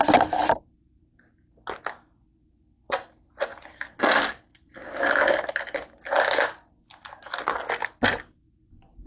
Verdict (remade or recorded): recorded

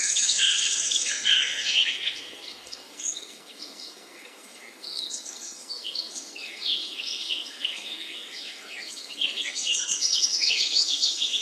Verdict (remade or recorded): remade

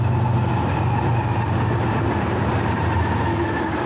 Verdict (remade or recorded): recorded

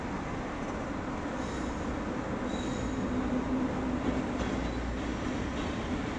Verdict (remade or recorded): recorded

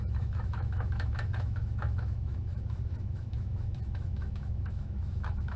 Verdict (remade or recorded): remade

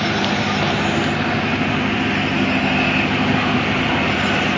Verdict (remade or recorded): recorded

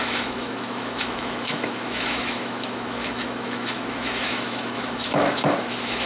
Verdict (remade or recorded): remade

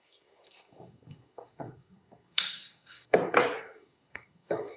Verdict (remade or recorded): remade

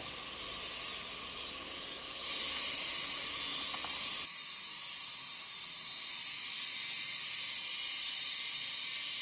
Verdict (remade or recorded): recorded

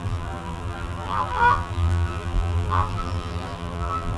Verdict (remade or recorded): remade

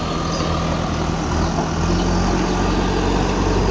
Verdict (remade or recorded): recorded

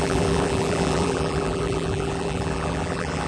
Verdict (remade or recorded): remade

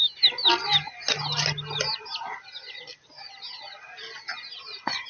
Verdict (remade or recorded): recorded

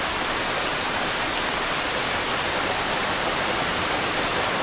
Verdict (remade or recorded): recorded